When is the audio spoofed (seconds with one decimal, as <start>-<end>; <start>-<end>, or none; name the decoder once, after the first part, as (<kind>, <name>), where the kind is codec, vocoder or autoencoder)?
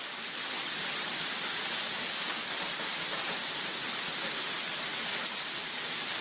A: 0.0-3.4 (vocoder, BigVGAN v2); 5.2-6.2